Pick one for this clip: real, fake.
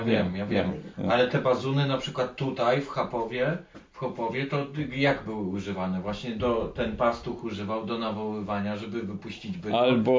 real